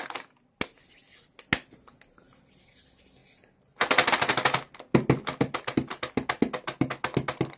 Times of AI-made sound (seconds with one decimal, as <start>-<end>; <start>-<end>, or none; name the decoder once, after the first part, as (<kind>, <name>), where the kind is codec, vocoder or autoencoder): none